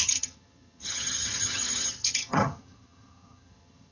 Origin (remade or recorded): remade